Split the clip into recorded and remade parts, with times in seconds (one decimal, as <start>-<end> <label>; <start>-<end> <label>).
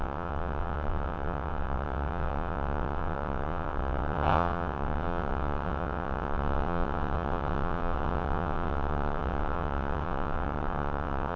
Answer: 0.0-11.4 remade